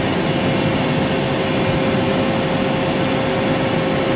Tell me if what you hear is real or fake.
real